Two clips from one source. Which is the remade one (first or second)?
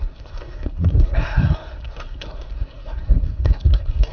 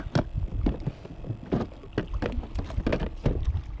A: first